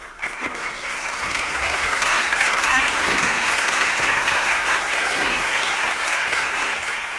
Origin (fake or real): fake